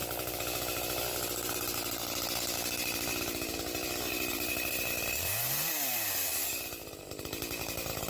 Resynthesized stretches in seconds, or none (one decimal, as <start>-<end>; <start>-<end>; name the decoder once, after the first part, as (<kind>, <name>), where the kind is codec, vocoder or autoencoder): 4.7-8.1 (vocoder, BigVGAN v2)